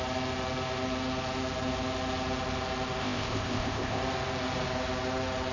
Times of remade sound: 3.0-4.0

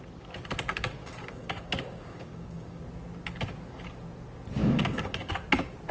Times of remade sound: 1.0-2.8; 4.6-5.3

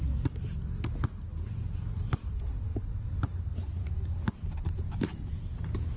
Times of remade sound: none

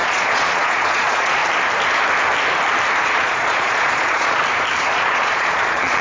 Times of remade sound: 0.0-1.4; 3.0-4.4; 4.9-6.0

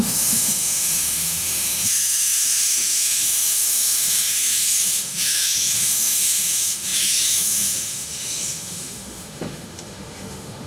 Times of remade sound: 0.0-10.7